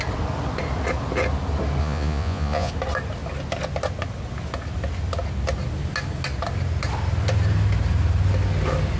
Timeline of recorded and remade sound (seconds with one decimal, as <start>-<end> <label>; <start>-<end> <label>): 0.0-1.8 recorded; 1.8-2.7 remade; 2.7-9.0 recorded